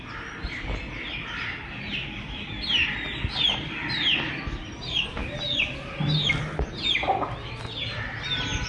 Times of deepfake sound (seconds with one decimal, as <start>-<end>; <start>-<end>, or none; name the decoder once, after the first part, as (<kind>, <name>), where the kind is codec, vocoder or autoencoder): none